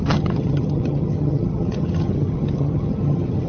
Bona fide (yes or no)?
no